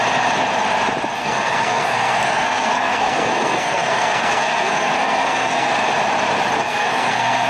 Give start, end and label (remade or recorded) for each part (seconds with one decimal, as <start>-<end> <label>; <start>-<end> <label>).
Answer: 0.0-1.2 recorded; 1.2-5.7 remade; 5.7-6.6 recorded; 6.6-7.5 remade